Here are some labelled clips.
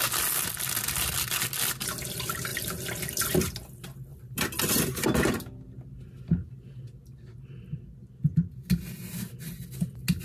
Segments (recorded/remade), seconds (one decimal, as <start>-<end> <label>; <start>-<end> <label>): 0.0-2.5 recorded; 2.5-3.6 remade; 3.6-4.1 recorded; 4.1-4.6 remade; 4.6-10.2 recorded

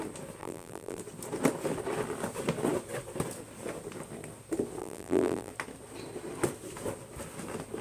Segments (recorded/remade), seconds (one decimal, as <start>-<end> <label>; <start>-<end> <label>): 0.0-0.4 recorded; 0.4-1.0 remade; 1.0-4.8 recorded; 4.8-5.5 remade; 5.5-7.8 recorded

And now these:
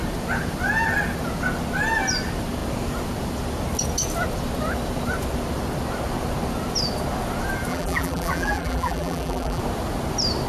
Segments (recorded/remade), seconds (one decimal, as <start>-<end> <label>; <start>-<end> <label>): 0.0-7.7 recorded; 7.7-9.6 remade; 9.6-10.5 recorded

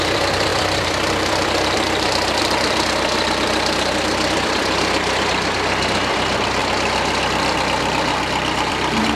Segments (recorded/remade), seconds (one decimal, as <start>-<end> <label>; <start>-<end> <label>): 0.0-6.6 remade; 6.6-8.7 recorded; 8.7-9.2 remade

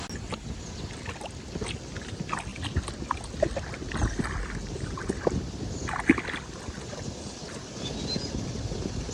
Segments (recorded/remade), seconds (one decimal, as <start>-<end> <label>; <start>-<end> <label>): 0.0-9.1 recorded

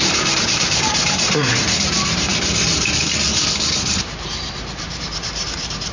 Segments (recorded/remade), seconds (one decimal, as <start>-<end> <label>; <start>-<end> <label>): 0.0-2.3 remade; 2.3-4.3 recorded; 4.3-5.9 remade